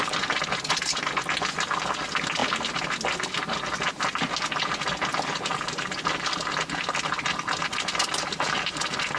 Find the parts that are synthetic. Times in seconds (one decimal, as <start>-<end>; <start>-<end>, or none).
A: none